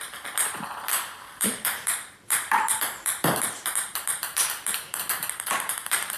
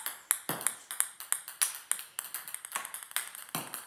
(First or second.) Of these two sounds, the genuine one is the second